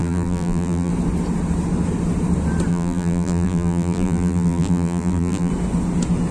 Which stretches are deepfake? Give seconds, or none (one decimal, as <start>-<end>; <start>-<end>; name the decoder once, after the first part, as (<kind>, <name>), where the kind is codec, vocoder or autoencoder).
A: 0.0-0.9 (vocoder, BigVGAN v2); 2.7-5.5